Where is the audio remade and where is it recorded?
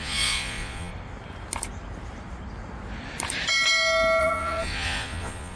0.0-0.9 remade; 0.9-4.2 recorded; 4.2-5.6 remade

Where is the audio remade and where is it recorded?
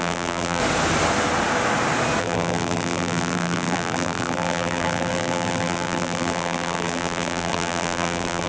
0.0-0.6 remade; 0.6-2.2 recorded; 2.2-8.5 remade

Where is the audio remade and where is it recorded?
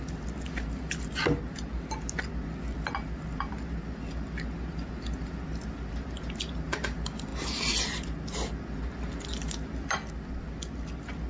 0.0-11.3 recorded